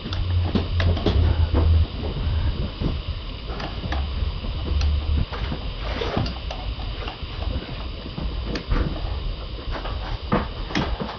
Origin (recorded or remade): recorded